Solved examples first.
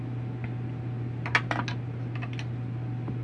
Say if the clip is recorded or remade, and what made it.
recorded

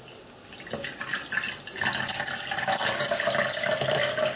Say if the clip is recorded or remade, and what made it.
recorded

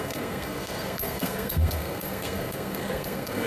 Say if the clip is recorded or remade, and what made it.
remade, codec, SNAC